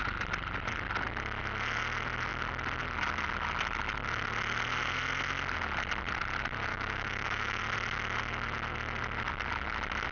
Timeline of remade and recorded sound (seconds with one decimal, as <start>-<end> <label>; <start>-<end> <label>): 0.0-6.7 recorded; 6.7-7.6 remade; 7.6-10.1 recorded